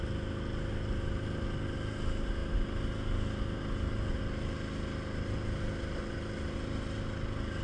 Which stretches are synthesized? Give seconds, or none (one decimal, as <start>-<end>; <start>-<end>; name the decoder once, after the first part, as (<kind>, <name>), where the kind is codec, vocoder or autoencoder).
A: none